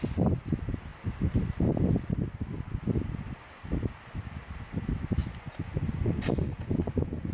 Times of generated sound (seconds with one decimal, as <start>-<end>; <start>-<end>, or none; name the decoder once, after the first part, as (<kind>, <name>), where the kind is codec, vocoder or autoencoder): 5.2-7.3 (vocoder, Vocos)